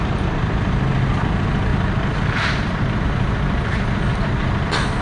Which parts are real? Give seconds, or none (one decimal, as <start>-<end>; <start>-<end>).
0.0-1.7; 3.0-5.0